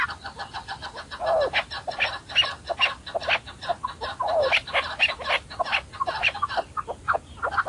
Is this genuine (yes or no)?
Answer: yes